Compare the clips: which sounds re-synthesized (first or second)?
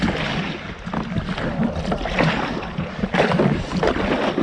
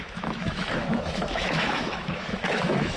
second